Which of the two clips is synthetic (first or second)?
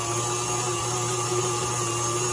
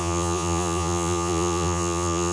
second